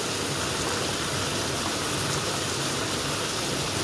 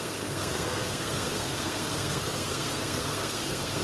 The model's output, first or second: second